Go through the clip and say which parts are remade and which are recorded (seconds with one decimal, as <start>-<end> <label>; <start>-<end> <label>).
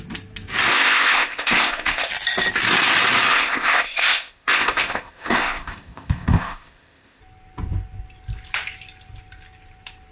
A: 0.0-0.7 recorded; 0.7-2.1 remade; 2.1-3.3 recorded; 3.3-7.2 remade; 7.2-10.1 recorded